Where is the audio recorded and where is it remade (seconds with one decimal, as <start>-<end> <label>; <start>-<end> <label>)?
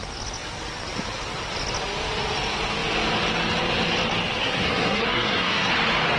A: 0.0-4.4 recorded; 4.4-5.7 remade; 5.7-6.2 recorded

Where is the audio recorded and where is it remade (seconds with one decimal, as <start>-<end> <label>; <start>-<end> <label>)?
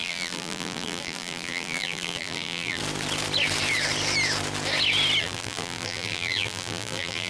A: 0.0-2.8 remade; 2.8-5.2 recorded; 5.2-7.3 remade